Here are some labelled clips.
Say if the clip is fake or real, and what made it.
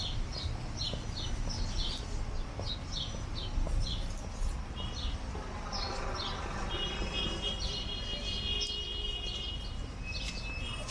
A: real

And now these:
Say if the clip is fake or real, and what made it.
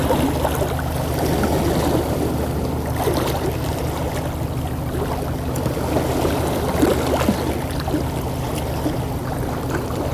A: real